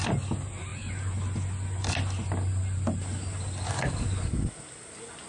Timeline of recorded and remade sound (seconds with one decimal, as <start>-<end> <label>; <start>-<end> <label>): 0.0-5.3 recorded